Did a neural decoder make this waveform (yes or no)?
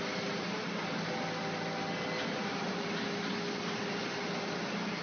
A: no